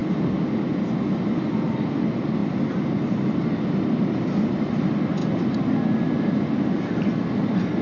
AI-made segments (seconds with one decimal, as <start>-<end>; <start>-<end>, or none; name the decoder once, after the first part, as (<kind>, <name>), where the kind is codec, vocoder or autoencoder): none